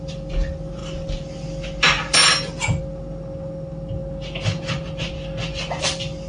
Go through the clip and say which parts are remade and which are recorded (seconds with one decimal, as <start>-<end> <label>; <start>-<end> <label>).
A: 0.0-6.3 recorded